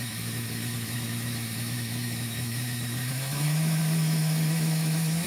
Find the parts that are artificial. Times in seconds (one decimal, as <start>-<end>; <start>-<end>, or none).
0.0-5.3